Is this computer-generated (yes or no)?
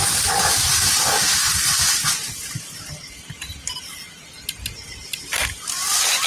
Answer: no